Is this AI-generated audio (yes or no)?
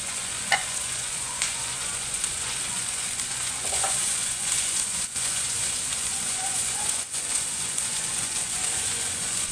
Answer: yes